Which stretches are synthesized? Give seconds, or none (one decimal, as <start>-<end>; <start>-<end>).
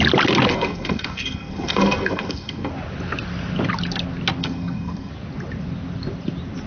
0.5-2.7; 4.4-5.1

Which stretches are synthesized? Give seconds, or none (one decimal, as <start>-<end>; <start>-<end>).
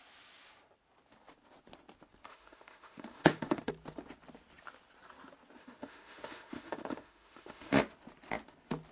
2.3-3.7; 5.6-7.8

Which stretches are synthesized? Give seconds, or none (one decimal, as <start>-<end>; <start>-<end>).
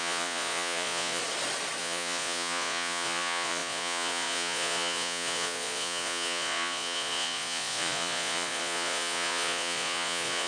0.0-1.2; 1.8-10.5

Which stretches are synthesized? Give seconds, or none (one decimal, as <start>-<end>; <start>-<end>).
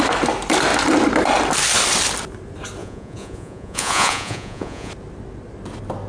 2.8-4.9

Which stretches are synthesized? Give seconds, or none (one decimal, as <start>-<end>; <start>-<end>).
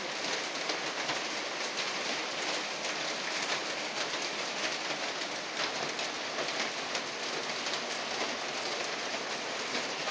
none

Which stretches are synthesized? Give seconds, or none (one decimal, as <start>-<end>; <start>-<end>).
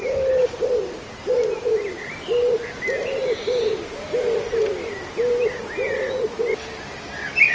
none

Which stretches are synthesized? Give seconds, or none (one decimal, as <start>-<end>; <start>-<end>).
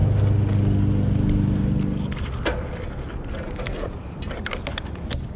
none